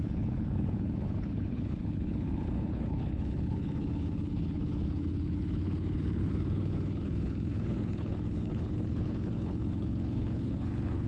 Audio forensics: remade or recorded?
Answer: remade